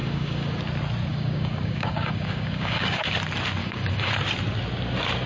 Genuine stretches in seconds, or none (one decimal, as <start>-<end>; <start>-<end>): 0.6-1.1; 3.1-3.6; 4.1-5.3